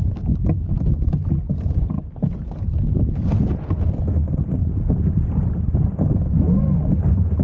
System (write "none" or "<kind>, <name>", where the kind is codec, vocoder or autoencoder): none